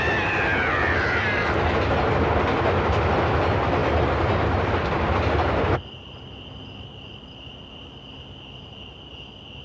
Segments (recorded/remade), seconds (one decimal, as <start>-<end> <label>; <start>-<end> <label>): 0.0-9.6 recorded